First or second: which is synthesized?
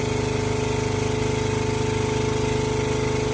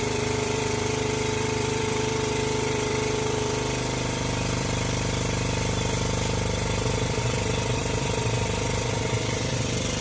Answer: second